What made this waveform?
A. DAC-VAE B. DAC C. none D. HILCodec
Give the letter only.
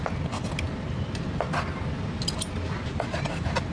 C